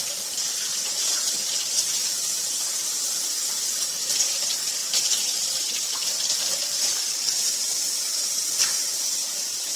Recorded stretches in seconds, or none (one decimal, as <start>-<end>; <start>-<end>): 2.0-4.1; 7.2-8.6